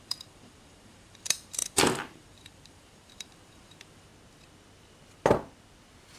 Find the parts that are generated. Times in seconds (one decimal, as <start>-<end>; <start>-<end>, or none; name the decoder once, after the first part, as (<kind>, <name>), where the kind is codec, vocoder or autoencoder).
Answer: 0.0-4.1 (vocoder, BigVGAN v2)